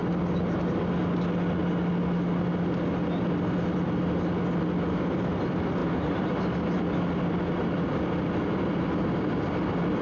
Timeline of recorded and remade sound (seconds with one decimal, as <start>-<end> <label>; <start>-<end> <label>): 0.0-5.8 recorded; 5.8-6.4 remade; 6.4-10.0 recorded